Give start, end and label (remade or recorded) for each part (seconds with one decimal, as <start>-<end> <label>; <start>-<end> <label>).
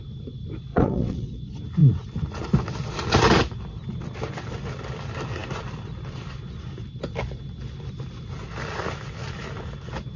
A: 0.0-0.7 recorded; 0.7-1.4 remade; 1.4-10.2 recorded